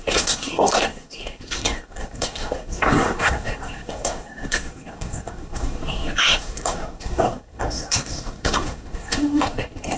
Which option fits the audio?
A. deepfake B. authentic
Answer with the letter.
A